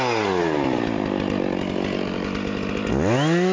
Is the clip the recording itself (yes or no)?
yes